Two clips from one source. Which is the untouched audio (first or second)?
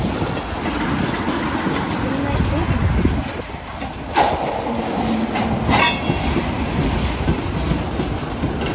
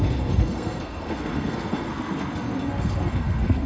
first